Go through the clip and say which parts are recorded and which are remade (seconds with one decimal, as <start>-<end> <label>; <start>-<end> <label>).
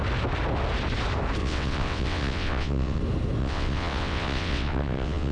0.0-1.4 recorded; 1.4-3.0 remade; 3.0-3.4 recorded; 3.4-5.3 remade